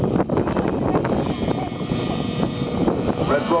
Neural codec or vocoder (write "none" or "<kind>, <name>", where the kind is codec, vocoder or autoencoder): none